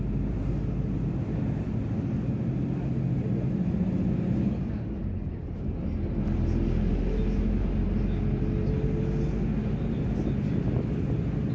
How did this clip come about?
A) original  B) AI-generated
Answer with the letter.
A